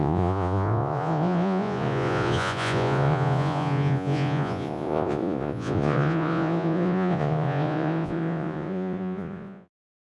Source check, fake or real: fake